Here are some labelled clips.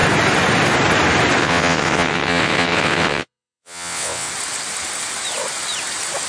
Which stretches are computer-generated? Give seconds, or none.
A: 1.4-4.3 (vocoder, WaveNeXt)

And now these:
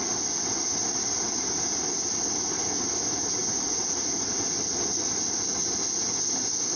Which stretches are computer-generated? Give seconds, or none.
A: none

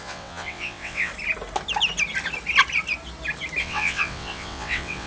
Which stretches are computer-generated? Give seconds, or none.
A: 0.0-1.1 (vocoder, WaveNeXt); 3.6-5.1